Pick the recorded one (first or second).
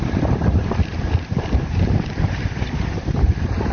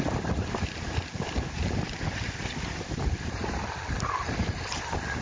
second